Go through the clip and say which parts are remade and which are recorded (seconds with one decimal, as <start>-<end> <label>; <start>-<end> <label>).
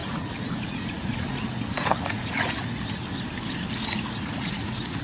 0.0-3.0 remade; 3.0-3.8 recorded; 3.8-5.0 remade